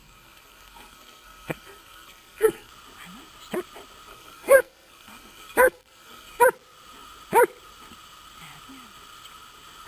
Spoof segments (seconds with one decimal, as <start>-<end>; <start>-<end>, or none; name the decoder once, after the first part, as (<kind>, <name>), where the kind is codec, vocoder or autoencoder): 0.0-2.7 (codec, SNAC); 4.1-6.4